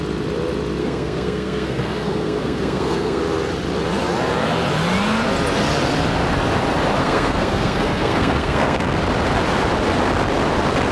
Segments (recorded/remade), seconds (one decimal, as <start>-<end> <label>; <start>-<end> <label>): 0.0-0.8 recorded; 0.8-3.2 remade; 3.2-7.0 recorded; 7.0-9.0 remade; 9.0-10.9 recorded